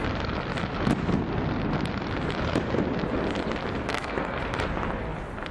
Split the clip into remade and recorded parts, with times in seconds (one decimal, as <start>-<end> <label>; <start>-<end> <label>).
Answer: 0.0-3.9 recorded; 3.9-4.4 remade; 4.4-5.5 recorded